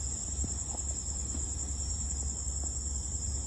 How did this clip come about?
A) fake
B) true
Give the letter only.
B